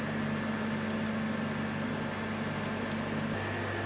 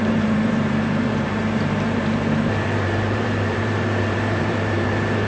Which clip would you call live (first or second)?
first